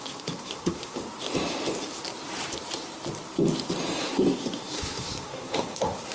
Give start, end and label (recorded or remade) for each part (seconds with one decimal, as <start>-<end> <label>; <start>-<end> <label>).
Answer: 0.0-1.0 remade; 1.0-4.0 recorded; 4.0-6.1 remade